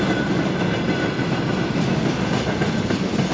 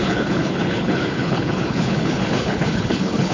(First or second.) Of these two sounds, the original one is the first